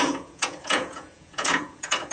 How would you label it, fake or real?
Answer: fake